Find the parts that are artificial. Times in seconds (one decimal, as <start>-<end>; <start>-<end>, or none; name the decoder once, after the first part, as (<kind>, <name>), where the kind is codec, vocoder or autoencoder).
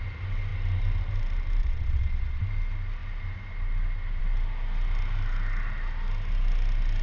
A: 1.6-2.4 (vocoder, Vocos)